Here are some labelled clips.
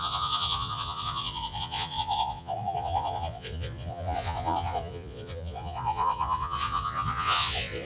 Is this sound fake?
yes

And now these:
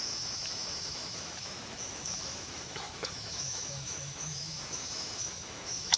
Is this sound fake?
yes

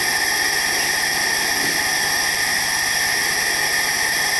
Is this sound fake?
no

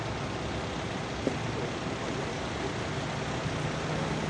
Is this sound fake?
no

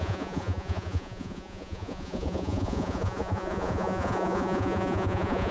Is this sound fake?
yes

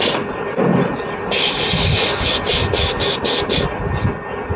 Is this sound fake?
no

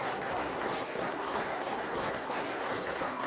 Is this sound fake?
yes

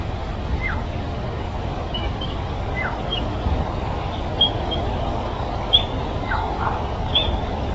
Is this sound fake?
yes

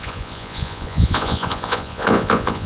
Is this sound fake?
yes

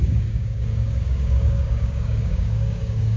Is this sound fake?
yes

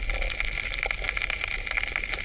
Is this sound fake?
no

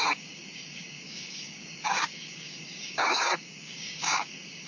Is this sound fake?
yes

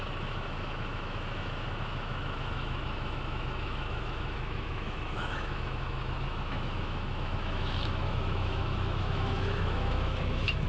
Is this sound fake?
yes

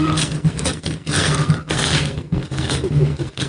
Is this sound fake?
yes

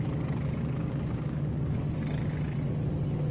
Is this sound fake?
no